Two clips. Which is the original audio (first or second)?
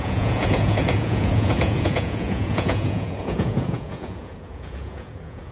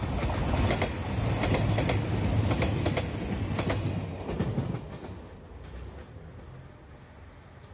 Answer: second